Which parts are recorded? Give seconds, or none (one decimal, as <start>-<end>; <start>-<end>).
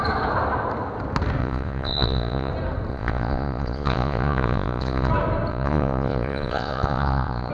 0.0-1.4; 2.5-2.9; 5.1-5.5